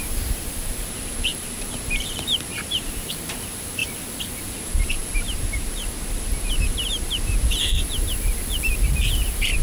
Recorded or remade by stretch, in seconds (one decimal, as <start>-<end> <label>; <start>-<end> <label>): 0.0-9.6 remade